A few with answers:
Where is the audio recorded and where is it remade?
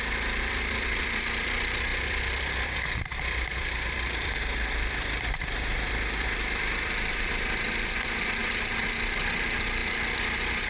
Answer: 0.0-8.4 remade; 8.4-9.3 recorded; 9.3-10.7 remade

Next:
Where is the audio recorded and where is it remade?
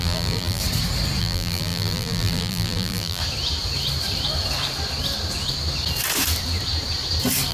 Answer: 0.0-0.6 remade; 0.6-1.2 recorded; 1.2-3.2 remade; 3.2-7.5 recorded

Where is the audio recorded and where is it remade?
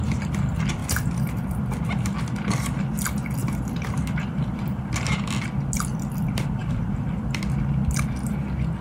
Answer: 0.0-0.8 recorded; 0.8-1.4 remade; 1.4-3.4 recorded; 3.4-4.8 remade; 4.8-8.8 recorded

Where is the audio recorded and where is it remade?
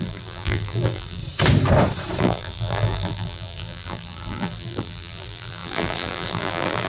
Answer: 0.0-1.2 remade; 1.2-2.2 recorded; 2.2-6.9 remade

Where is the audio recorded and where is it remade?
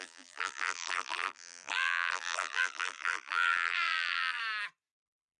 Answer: 0.0-4.4 remade; 4.4-5.4 recorded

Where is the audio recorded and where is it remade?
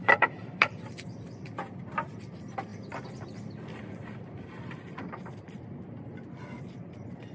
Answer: 0.0-0.9 remade; 0.9-7.3 recorded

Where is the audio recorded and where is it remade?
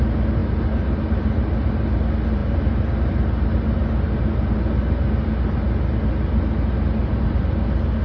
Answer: 0.0-8.0 recorded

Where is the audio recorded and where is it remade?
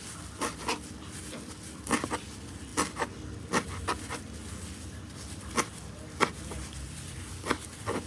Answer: 0.0-8.1 recorded